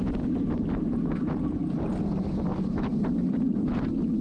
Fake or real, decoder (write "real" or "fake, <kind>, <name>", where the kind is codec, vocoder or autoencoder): real